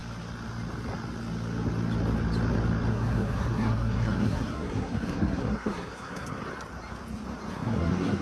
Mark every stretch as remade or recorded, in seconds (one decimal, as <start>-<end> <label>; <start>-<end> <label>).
0.0-2.9 recorded; 2.9-6.4 remade; 6.4-7.5 recorded; 7.5-8.2 remade

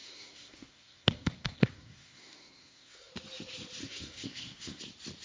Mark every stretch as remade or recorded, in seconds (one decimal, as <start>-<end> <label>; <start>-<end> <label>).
0.0-3.1 remade; 3.1-3.8 recorded; 3.8-4.8 remade; 4.8-5.2 recorded

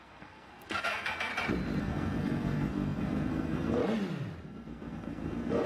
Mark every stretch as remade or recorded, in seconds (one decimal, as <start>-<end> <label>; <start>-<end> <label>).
0.0-1.3 remade; 1.3-1.8 recorded; 1.8-3.8 remade; 3.8-4.4 recorded; 4.4-5.7 remade

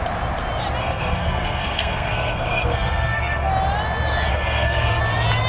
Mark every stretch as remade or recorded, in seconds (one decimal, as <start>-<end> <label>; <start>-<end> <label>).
0.0-0.8 recorded; 0.8-3.5 remade; 3.5-4.3 recorded; 4.3-5.0 remade; 5.0-5.5 recorded

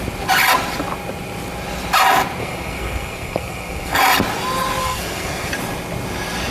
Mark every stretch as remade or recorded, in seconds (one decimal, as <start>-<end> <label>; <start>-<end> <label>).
0.0-2.4 recorded; 2.4-4.0 remade; 4.0-4.8 recorded; 4.8-5.5 remade; 5.5-6.5 recorded